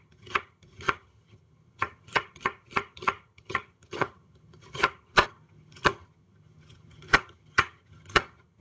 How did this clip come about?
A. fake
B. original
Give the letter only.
A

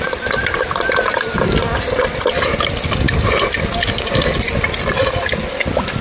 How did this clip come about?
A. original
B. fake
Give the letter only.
A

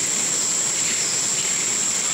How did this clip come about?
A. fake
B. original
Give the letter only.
B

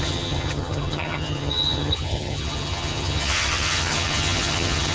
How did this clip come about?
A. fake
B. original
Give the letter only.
A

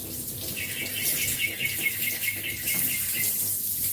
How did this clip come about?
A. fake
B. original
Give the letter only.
B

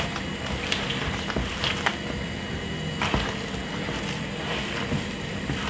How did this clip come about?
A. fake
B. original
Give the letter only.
B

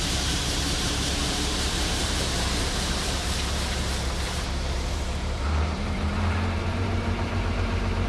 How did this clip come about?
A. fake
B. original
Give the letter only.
A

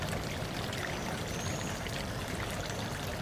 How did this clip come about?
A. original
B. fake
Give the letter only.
A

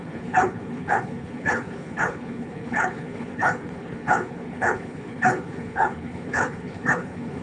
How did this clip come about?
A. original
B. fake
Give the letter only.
B